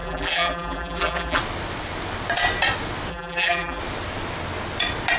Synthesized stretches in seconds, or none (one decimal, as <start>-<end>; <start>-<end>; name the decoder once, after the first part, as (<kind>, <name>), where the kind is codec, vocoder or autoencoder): 0.0-1.4 (vocoder, BigVGAN v2); 3.1-3.8